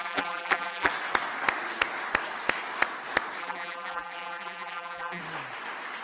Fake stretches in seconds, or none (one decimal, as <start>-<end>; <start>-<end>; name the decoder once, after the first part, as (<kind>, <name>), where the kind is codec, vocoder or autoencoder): 0.0-0.9 (vocoder, BigVGAN v2); 3.4-5.2